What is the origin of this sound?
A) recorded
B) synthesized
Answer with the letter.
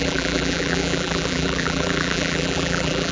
B